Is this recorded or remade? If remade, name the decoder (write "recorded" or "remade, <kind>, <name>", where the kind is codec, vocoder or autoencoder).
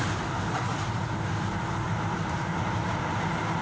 recorded